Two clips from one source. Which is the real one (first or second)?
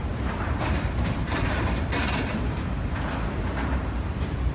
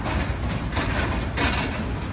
second